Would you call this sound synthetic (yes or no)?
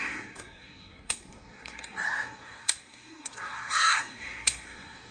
yes